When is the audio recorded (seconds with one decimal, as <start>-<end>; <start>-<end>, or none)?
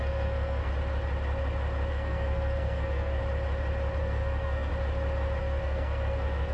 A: 0.7-1.9; 3.2-4.0; 4.7-5.4